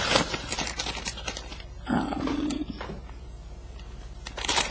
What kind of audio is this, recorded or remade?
remade